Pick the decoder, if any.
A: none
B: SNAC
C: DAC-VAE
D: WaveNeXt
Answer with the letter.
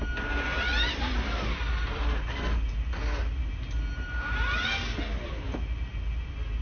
A